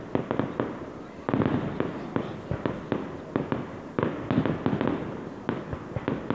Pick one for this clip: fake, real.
real